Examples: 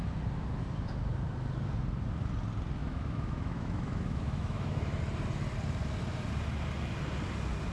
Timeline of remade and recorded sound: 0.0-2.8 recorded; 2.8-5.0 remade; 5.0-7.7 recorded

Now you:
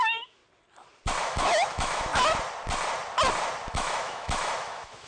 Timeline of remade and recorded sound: 0.0-0.4 remade; 0.4-1.2 recorded; 1.2-2.1 remade; 2.1-3.7 recorded; 3.7-5.1 remade

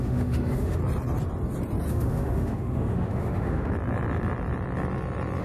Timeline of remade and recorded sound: 0.0-0.8 remade; 0.8-1.9 recorded; 1.9-3.7 remade; 3.7-5.4 recorded

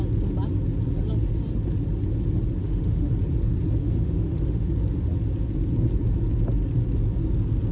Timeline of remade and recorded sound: 0.0-2.6 recorded; 2.6-3.1 remade; 3.1-3.8 recorded; 3.8-4.7 remade; 4.7-7.7 recorded

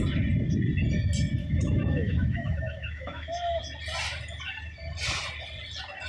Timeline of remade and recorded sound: 0.0-1.4 recorded; 1.4-3.6 remade; 3.6-6.1 recorded

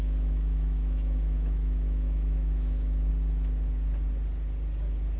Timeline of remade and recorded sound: 0.0-3.1 remade; 3.1-5.2 recorded

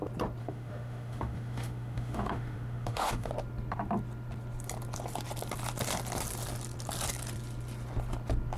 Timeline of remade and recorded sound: 0.0-0.4 recorded; 0.4-3.3 remade; 3.3-8.6 recorded

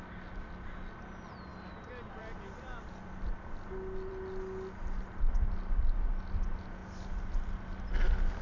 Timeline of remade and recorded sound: 0.0-8.4 recorded